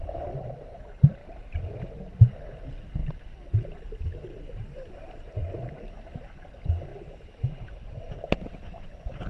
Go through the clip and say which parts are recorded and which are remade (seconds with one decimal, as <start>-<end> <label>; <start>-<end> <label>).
0.0-1.2 recorded; 1.2-1.9 remade; 1.9-4.3 recorded; 4.3-5.9 remade; 5.9-6.9 recorded; 6.9-8.1 remade; 8.1-9.3 recorded